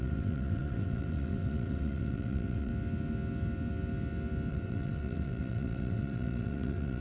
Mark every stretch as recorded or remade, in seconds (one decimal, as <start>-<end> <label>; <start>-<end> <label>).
0.0-2.7 remade; 2.7-4.5 recorded; 4.5-7.0 remade